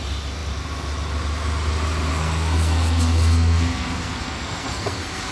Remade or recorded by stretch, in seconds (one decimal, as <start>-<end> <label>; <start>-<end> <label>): 0.0-2.1 recorded; 2.1-5.3 remade